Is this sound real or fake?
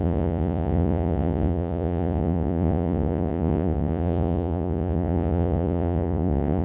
fake